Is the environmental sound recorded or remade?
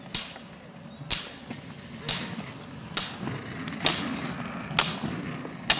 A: recorded